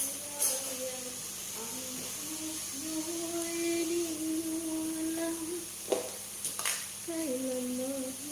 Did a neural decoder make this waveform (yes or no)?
no